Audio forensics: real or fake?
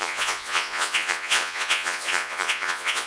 fake